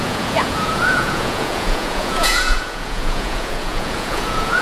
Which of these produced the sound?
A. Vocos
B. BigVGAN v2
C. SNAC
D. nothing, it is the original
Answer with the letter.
A